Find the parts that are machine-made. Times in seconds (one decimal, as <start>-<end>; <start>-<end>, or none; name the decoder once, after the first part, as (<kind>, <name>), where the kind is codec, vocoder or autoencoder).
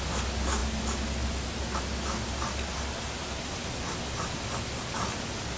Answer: none